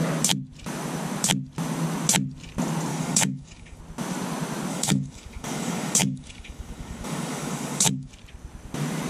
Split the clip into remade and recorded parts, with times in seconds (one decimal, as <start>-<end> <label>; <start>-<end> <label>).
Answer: 0.0-2.9 recorded; 2.9-3.8 remade; 3.8-4.7 recorded; 4.7-8.1 remade; 8.1-9.1 recorded